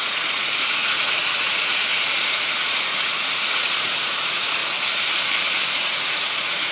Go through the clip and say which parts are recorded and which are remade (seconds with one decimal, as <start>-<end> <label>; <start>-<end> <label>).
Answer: 0.0-4.6 remade; 4.6-5.7 recorded; 5.7-6.7 remade